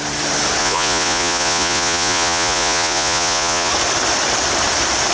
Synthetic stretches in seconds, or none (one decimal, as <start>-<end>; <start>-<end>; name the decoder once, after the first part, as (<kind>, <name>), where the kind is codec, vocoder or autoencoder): 0.6-3.7 (vocoder, Vocos)